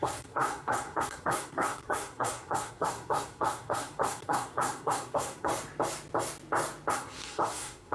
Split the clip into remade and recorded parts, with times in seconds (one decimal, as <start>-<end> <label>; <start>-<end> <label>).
0.0-5.5 remade; 5.5-6.9 recorded; 6.9-7.9 remade